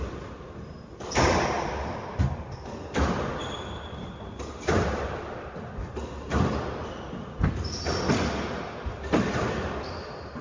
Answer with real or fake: real